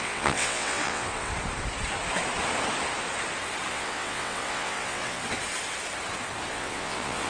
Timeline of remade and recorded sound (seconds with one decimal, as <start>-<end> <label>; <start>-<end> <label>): 0.0-1.3 remade; 1.3-3.7 recorded; 3.7-5.2 remade; 5.2-6.5 recorded; 6.5-7.3 remade